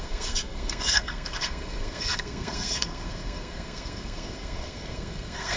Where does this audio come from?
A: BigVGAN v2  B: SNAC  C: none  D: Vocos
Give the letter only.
B